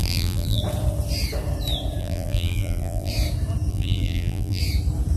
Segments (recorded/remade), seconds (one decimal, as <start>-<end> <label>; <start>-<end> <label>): 0.0-0.6 remade; 0.6-2.0 recorded; 2.0-3.1 remade; 3.1-3.7 recorded; 3.7-4.6 remade; 4.6-5.2 recorded